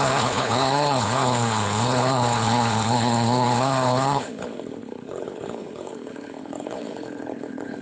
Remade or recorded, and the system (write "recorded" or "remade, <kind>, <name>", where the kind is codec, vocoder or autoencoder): remade, codec, HILCodec